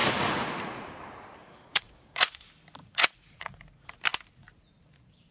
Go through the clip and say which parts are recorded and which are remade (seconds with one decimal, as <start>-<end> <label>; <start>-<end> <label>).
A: 0.0-0.9 remade; 0.9-1.4 recorded; 1.4-2.4 remade; 2.4-2.8 recorded; 2.8-3.6 remade; 3.6-5.3 recorded